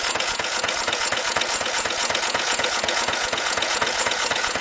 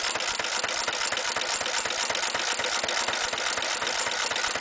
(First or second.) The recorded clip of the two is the second